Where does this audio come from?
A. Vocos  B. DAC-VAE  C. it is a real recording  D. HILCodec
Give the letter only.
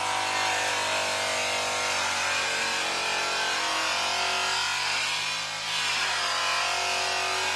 C